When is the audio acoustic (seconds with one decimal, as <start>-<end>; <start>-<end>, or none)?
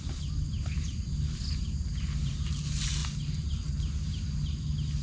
0.0-5.0